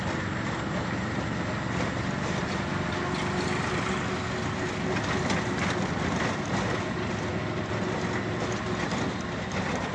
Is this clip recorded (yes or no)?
yes